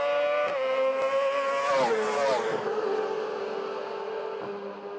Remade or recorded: recorded